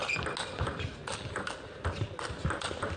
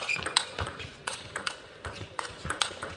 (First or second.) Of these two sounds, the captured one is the first